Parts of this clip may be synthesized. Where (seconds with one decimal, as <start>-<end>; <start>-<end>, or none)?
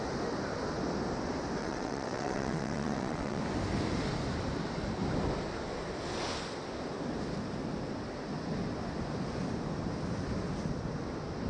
1.6-3.4